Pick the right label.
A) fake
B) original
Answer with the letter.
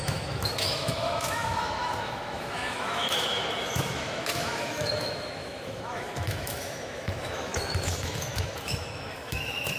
A